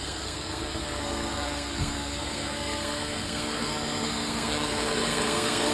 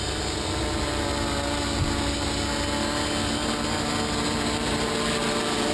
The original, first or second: second